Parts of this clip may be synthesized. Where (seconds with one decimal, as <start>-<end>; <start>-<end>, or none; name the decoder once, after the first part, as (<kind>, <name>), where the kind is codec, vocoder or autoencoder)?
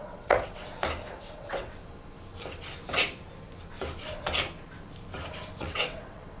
0.0-0.6 (vocoder, WaveNeXt); 1.2-1.8; 5.6-6.4